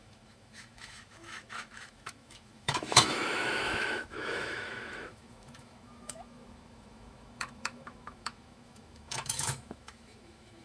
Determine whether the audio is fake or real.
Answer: fake